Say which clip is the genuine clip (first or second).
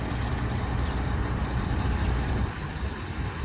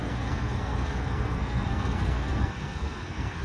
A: first